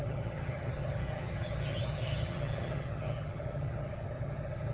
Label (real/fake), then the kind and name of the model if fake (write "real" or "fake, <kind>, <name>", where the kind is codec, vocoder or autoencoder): fake, vocoder, HiFi-GAN